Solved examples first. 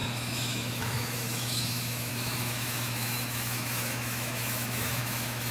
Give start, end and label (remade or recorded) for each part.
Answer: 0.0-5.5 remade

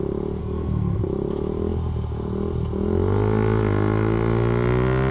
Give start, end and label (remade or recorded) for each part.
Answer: 0.0-0.4 recorded; 0.4-1.0 remade; 1.0-5.1 recorded

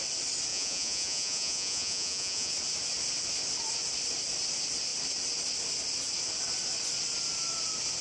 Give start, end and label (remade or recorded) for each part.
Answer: 0.0-0.5 recorded; 0.5-2.5 remade; 2.5-8.0 recorded